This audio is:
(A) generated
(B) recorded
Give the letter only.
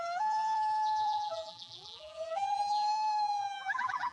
A